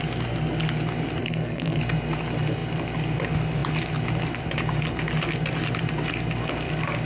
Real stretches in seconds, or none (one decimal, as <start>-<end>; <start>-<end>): 0.0-1.2; 1.8-7.1